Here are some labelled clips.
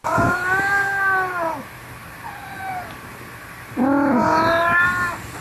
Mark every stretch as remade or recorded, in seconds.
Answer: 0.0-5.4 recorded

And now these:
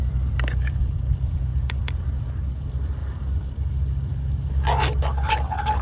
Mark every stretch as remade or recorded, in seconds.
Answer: 0.0-5.8 remade

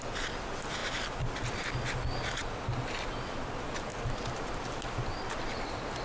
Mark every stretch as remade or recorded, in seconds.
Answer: 0.0-6.0 recorded

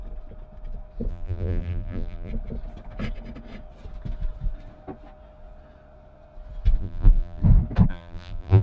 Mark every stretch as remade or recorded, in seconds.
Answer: 0.0-1.1 recorded; 1.1-2.3 remade; 2.3-6.8 recorded; 6.8-7.4 remade; 7.4-7.9 recorded; 7.9-8.6 remade